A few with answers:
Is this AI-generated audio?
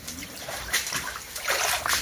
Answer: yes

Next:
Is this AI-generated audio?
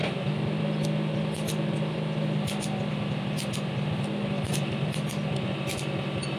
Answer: no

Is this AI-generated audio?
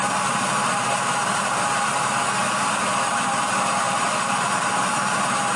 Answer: yes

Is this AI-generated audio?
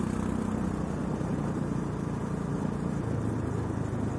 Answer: no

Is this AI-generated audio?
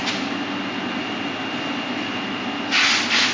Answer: no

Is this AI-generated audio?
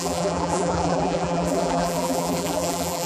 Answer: yes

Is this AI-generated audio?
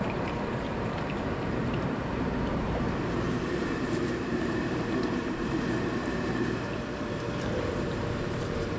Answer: yes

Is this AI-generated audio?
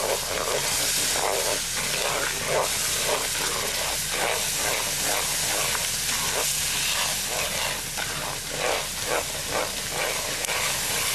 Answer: no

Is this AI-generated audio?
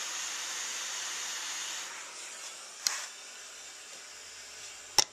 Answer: no